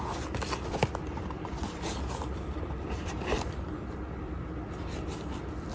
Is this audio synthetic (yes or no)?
no